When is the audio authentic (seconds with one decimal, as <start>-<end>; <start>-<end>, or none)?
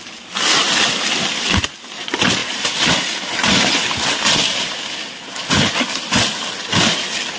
0.0-7.4